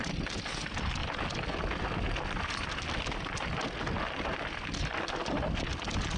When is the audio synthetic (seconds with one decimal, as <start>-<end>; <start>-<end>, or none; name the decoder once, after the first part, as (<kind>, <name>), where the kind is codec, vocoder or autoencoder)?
none